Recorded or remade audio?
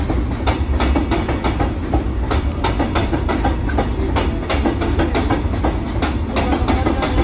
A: recorded